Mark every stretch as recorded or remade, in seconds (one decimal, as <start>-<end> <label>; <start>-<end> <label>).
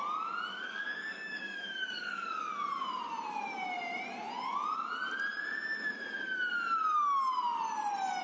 0.0-0.5 recorded; 0.5-2.5 remade; 2.5-8.2 recorded